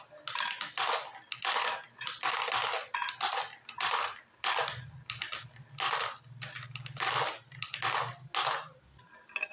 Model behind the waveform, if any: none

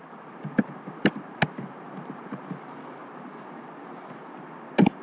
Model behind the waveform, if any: none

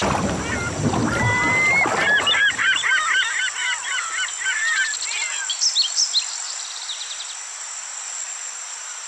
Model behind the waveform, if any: none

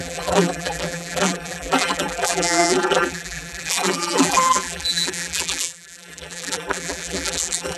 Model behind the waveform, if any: vocoder, BigVGAN v2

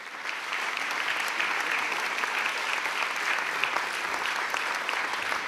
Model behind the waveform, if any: none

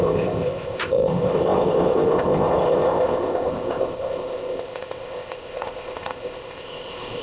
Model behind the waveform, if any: codec, ZipCodec